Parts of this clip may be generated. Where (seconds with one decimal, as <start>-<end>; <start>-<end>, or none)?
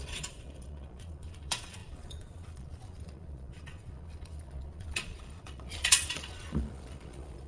0.0-7.5